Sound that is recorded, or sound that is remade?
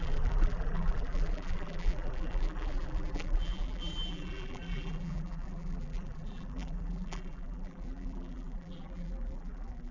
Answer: remade